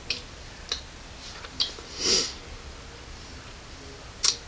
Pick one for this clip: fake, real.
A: real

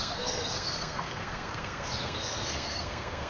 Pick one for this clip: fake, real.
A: fake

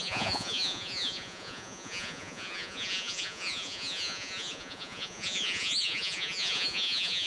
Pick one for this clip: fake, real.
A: fake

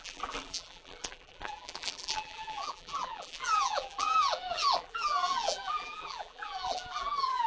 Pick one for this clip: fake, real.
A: fake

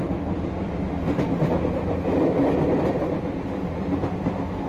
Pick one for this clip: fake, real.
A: real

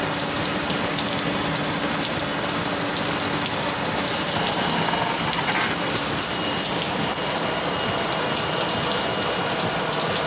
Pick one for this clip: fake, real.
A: real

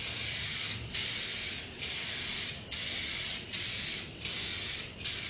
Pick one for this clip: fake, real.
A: real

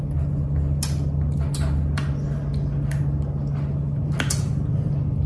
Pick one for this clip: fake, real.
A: real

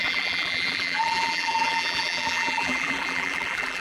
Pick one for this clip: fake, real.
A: fake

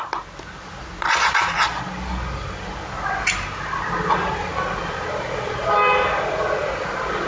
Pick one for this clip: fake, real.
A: real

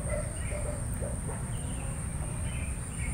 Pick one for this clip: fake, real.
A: real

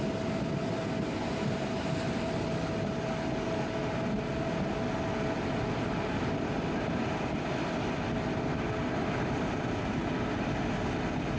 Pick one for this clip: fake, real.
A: real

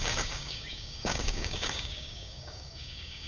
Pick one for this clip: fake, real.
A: fake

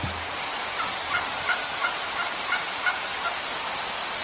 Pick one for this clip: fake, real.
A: real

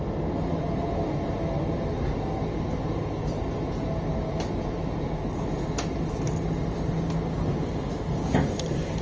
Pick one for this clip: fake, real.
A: real